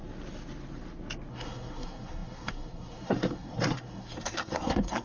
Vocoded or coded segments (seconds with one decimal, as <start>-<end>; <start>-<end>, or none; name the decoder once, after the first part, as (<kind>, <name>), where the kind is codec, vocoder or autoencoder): 1.3-5.0 (codec, SNAC)